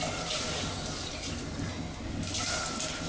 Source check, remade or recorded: recorded